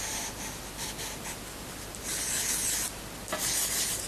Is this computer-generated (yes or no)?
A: yes